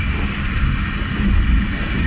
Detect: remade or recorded recorded